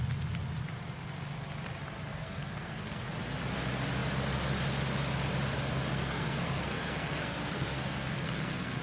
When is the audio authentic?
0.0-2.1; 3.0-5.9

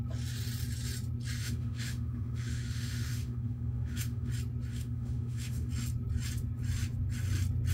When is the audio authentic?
0.0-1.4; 4.3-4.7; 5.7-7.7

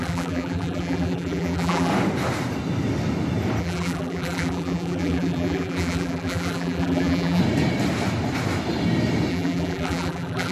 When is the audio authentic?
1.9-3.6; 7.4-9.3

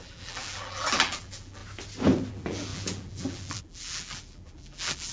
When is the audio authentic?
1.6-2.3

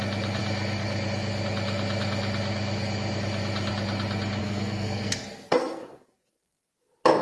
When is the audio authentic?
0.0-4.4; 6.7-7.2

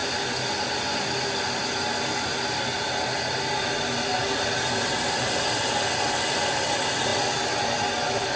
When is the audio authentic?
0.0-8.4

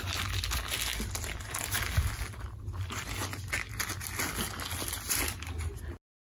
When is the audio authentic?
0.0-6.2

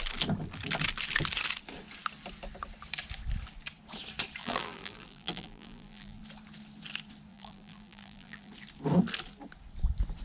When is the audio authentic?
0.0-4.4; 6.2-7.3; 8.5-10.2